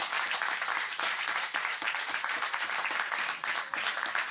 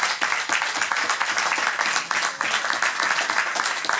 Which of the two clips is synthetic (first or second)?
first